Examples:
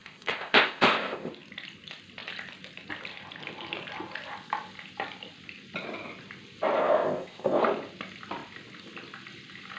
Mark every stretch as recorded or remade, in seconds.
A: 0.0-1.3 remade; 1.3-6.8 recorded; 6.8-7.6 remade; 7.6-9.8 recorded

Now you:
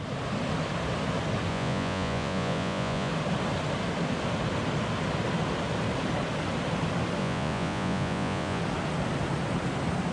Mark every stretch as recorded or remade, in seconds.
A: 0.0-1.5 recorded; 1.5-3.1 remade; 3.1-7.2 recorded; 7.2-8.6 remade; 8.6-10.1 recorded

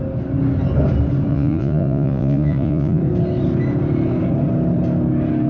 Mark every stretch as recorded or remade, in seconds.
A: 0.0-1.3 recorded; 1.3-3.0 remade; 3.0-5.5 recorded

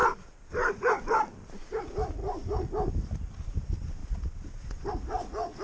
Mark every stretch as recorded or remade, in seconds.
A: 0.0-1.8 remade; 1.8-4.0 recorded; 4.0-4.9 remade; 4.9-5.6 recorded

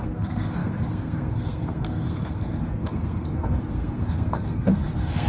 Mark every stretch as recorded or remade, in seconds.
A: 0.0-5.3 remade

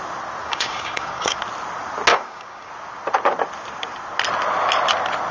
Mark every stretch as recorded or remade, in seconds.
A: 0.0-0.4 recorded; 0.4-1.4 remade; 1.4-2.1 recorded; 2.1-2.7 remade; 2.7-5.3 recorded

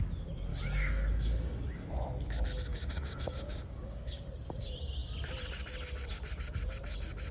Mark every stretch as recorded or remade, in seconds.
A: 0.0-0.5 recorded; 0.5-1.9 remade; 1.9-2.7 recorded; 2.7-4.2 remade; 4.2-7.3 recorded